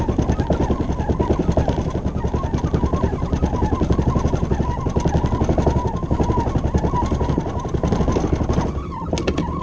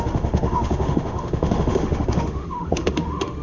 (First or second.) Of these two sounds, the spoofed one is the second